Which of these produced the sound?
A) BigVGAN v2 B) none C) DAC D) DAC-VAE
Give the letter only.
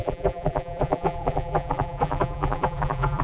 A